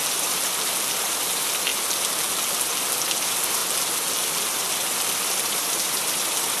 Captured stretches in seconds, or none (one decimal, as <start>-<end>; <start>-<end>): 1.7-2.8; 3.6-5.2